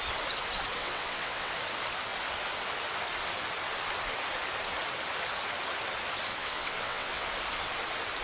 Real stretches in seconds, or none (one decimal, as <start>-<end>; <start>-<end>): 0.0-0.8; 1.5-6.3; 7.3-8.2